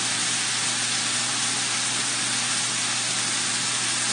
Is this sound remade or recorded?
recorded